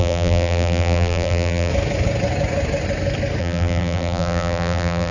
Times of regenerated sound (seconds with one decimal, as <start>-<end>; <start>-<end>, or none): 0.0-1.7; 3.4-5.1